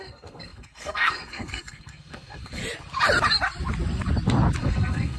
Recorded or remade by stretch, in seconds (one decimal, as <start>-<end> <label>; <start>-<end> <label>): 0.0-2.6 remade; 2.6-4.6 recorded; 4.6-5.2 remade